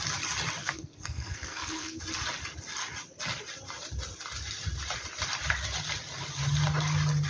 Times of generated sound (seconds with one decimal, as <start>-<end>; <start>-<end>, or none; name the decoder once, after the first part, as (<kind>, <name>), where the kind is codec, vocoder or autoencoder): 0.6-2.0 (codec, SNAC)